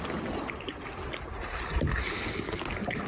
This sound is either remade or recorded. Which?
recorded